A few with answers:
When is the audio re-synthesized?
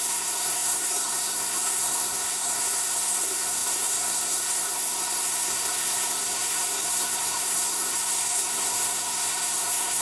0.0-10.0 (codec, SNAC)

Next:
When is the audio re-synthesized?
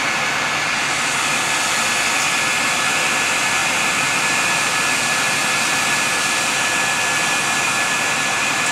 none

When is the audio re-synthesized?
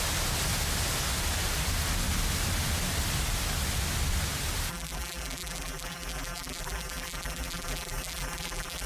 4.7-8.9 (vocoder, BigVGAN v2)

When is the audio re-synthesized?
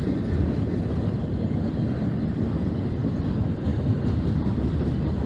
none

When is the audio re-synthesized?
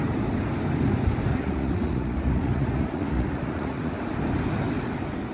1.3-3.9 (vocoder, Vocos)